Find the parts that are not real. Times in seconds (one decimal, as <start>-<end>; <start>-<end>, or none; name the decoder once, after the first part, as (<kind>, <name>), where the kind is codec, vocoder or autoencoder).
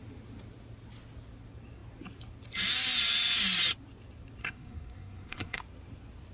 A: 4.4-5.6 (codec, SNAC)